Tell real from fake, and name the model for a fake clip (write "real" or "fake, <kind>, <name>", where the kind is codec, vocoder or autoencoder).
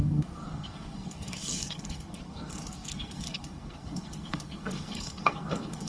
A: fake, codec, SNAC